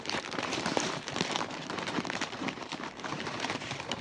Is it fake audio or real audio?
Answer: fake